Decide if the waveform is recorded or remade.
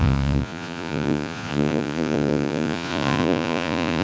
remade